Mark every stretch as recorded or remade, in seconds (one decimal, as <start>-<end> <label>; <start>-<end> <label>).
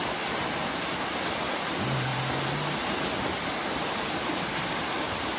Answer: 0.0-0.6 recorded; 0.6-1.5 remade; 1.5-5.4 recorded